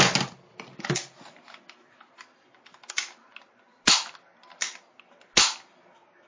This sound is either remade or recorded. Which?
recorded